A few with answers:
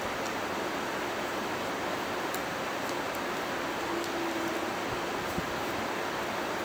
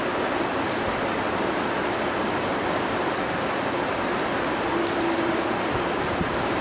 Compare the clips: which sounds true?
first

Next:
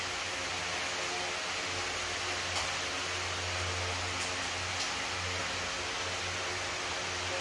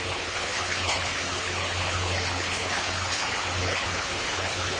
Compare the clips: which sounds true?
first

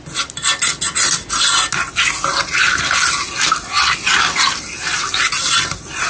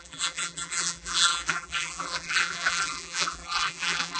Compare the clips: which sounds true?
first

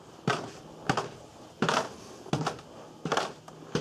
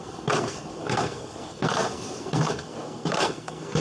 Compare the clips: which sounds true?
first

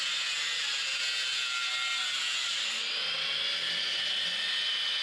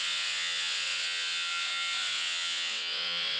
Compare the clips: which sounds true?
first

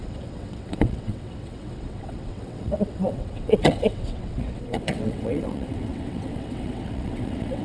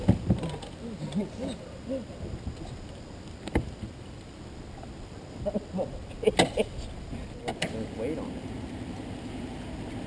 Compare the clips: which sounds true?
second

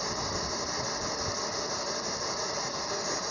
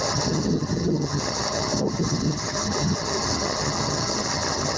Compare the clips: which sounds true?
first